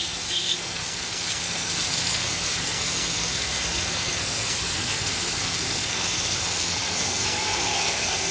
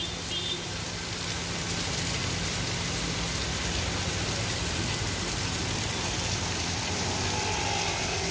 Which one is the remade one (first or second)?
first